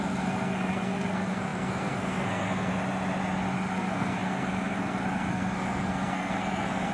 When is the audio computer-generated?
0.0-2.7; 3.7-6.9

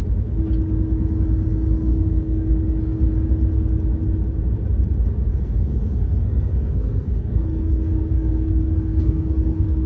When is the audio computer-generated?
1.9-2.5; 5.3-9.9

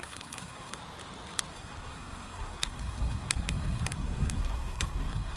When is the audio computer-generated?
0.0-0.8; 1.5-5.4